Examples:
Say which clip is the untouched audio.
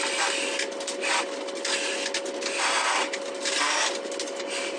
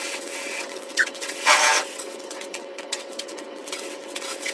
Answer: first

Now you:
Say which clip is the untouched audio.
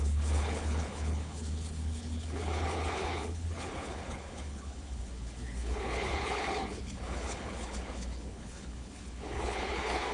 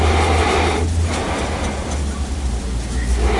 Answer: second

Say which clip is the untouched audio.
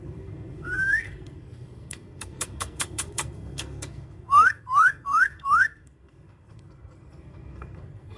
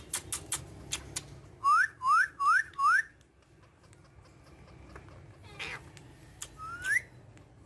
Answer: second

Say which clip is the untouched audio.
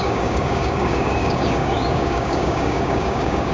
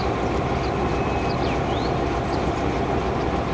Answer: second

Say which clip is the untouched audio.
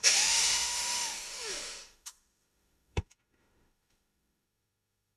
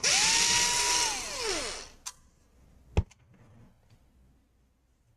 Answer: second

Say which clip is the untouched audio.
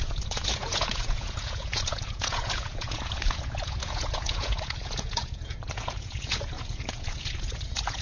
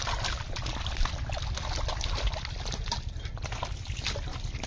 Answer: second